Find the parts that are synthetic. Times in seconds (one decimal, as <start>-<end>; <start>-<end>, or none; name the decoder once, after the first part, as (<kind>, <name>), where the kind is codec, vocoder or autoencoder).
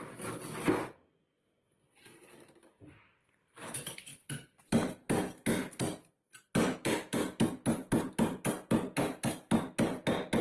none